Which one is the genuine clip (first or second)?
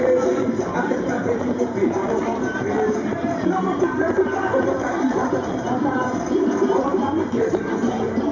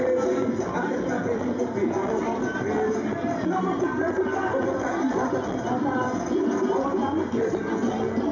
second